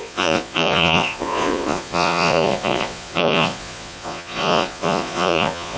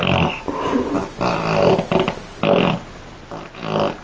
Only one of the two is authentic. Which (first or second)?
second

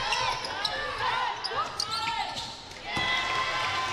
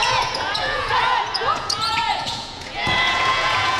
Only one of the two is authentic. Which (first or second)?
first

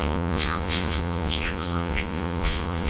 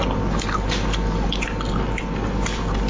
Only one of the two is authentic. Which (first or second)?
second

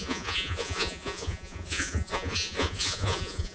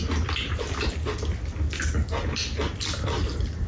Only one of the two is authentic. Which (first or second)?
second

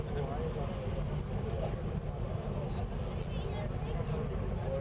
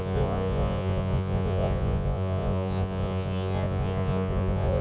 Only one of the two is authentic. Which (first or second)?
first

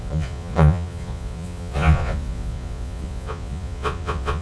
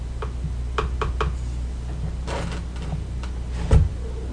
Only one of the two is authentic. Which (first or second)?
second